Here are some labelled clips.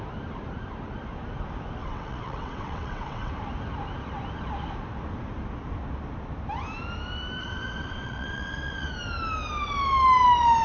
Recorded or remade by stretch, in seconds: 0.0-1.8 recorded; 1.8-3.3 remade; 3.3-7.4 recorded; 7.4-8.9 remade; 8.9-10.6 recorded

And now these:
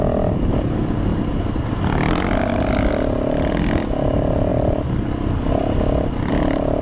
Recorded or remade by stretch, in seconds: 0.0-1.1 recorded; 1.1-1.7 remade; 1.7-6.8 recorded

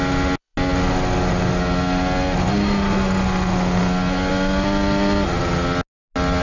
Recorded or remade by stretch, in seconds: 0.0-6.4 recorded

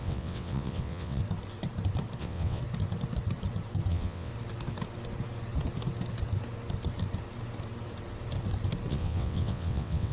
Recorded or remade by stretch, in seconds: 0.0-1.2 remade; 1.2-2.2 recorded; 2.2-2.6 remade; 2.6-3.9 recorded; 3.9-4.3 remade; 4.3-8.9 recorded; 8.9-10.1 remade

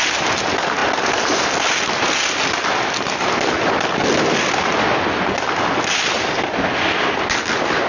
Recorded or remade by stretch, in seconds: 0.0-7.9 recorded

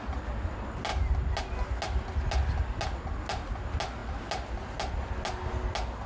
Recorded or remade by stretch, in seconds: 0.0-6.1 recorded

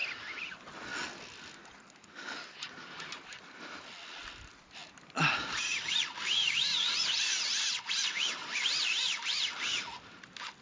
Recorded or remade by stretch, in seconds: 0.0-10.6 recorded